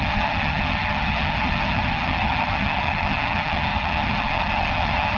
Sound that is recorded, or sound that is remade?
remade